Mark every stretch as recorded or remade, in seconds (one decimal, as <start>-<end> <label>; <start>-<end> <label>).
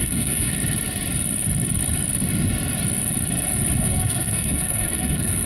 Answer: 0.0-0.5 remade; 0.5-3.8 recorded; 3.8-5.5 remade